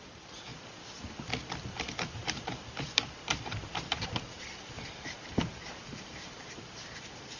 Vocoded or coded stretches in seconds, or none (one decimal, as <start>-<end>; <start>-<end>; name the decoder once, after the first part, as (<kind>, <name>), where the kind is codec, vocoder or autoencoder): 0.0-0.5 (vocoder, BigVGAN v2); 1.6-7.4